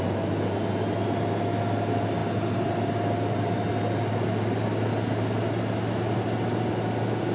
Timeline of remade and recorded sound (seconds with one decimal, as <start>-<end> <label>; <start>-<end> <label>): 0.0-7.3 recorded